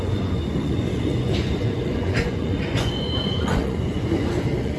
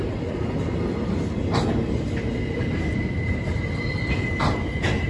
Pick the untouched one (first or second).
second